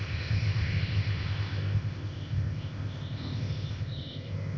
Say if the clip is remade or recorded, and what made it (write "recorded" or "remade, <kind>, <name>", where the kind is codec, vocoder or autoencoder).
remade, codec, ZipCodec